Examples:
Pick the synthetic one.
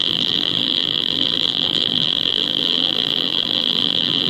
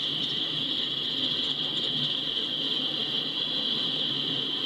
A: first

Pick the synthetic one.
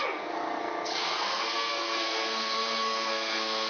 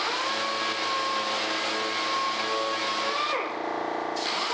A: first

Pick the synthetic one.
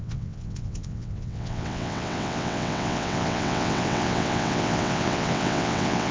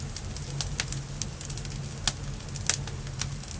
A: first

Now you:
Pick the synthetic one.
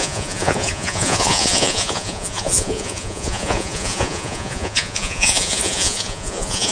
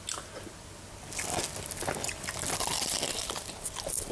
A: first